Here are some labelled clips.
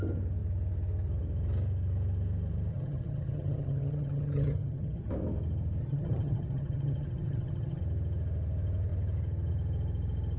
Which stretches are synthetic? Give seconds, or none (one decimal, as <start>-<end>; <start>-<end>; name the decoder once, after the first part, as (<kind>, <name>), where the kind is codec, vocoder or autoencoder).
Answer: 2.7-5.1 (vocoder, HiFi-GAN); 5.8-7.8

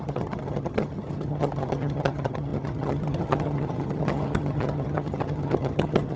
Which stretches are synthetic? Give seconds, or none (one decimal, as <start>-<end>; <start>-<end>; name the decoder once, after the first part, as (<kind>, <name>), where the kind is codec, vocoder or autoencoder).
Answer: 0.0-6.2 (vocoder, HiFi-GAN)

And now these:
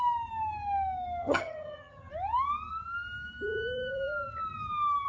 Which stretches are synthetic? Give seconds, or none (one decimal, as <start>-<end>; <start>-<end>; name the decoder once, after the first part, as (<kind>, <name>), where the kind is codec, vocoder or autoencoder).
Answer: 1.2-2.1 (vocoder, HiFi-GAN)

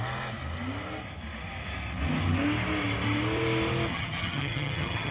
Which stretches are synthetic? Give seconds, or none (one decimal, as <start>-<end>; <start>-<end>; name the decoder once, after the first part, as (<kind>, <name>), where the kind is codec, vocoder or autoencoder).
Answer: 3.9-5.1 (vocoder, HiFi-GAN)

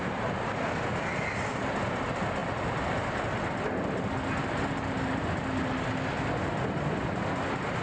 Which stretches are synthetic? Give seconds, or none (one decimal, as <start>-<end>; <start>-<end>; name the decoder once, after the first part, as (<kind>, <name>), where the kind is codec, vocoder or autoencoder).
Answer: none

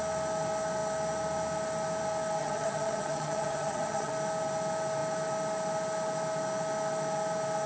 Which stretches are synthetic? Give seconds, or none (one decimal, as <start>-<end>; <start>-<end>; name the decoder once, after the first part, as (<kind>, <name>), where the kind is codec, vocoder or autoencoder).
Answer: 2.4-4.1 (vocoder, HiFi-GAN)